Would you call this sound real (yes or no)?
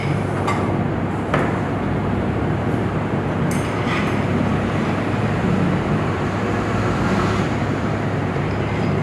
no